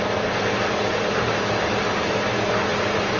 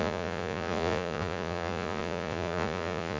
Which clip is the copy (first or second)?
second